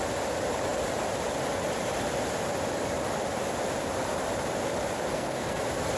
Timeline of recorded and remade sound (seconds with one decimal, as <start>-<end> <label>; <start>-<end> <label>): 0.0-5.1 recorded; 5.1-5.6 remade; 5.6-6.0 recorded